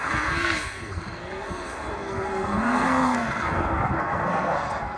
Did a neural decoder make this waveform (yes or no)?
yes